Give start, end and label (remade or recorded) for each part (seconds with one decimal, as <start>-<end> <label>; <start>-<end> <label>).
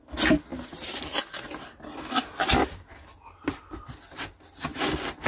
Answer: 0.0-5.3 recorded